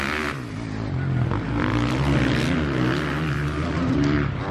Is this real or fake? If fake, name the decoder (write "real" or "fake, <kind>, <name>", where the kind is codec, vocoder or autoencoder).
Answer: real